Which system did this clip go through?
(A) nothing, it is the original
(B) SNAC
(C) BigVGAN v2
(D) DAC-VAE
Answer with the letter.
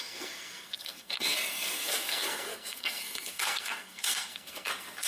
B